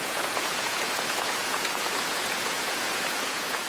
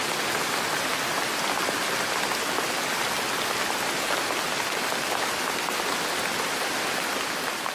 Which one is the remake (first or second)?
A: first